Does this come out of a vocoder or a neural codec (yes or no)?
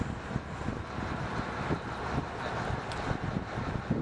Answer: no